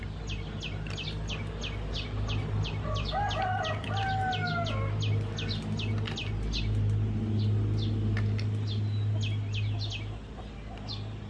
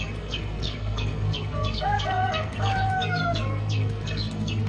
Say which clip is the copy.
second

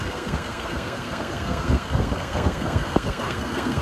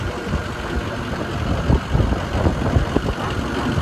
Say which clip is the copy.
first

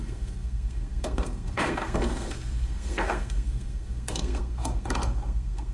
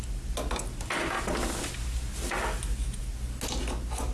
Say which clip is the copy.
first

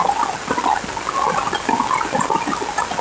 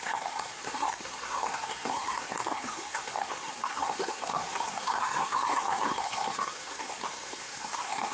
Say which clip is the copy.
second